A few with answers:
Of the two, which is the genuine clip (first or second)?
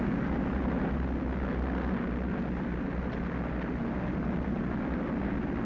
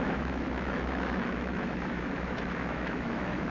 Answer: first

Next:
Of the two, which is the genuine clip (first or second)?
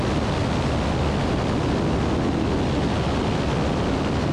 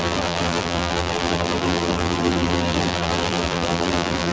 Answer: first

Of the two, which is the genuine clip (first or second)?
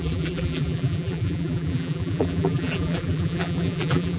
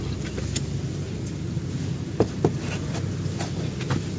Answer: second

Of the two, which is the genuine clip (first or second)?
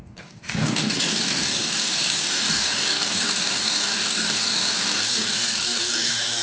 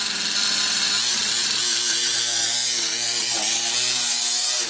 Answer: second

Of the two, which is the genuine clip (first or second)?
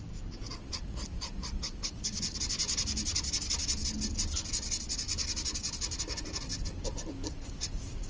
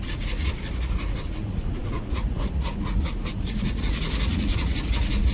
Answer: first